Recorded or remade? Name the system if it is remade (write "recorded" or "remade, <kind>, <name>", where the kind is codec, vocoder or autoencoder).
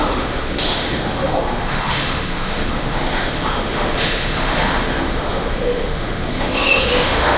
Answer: remade, autoencoder, DAC-VAE